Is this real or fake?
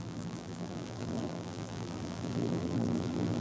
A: fake